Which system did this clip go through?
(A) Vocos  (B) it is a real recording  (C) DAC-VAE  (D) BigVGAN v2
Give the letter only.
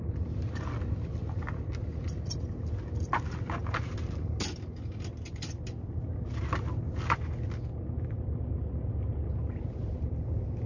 B